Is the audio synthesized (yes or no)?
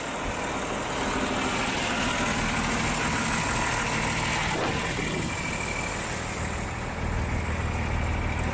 no